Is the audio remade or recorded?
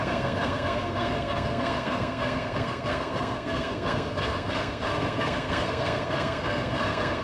remade